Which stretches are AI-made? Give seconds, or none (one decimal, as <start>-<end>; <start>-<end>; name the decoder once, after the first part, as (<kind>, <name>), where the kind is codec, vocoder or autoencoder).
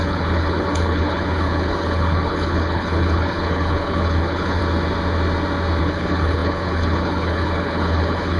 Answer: 0.0-4.6 (codec, HILCodec); 5.8-8.4